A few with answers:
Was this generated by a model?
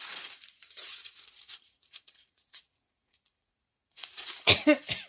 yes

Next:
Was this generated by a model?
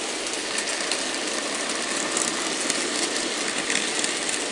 no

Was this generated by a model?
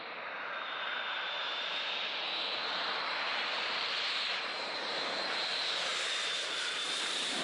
yes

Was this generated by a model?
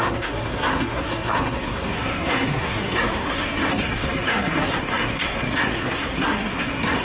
yes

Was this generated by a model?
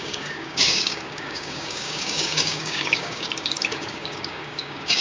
yes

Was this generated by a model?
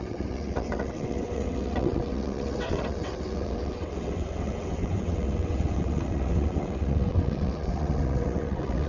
yes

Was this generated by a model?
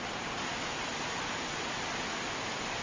no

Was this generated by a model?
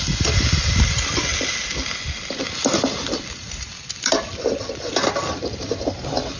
no